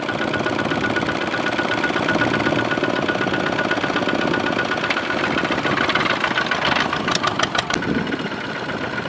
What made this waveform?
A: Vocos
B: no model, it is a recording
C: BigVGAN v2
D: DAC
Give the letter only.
B